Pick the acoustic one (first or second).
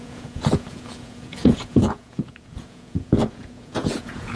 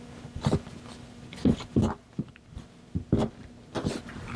second